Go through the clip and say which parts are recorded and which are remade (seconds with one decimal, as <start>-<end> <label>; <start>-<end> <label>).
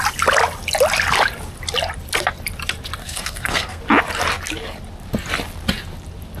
0.0-3.0 recorded; 3.0-3.8 remade; 3.8-6.4 recorded